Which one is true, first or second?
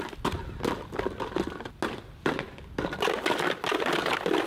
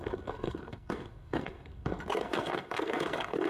first